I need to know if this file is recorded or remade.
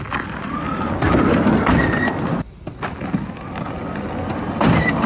recorded